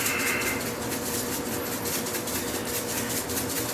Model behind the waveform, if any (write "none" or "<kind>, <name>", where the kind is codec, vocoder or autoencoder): none